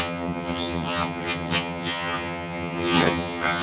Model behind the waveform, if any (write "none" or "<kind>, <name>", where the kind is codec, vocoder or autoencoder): vocoder, HiFi-GAN